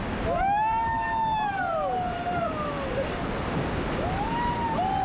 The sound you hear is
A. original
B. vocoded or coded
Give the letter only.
A